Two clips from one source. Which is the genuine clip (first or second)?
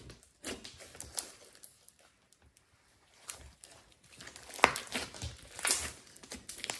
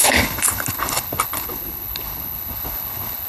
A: first